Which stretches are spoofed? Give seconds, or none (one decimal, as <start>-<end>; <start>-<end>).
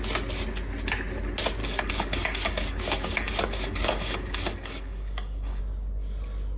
1.6-5.6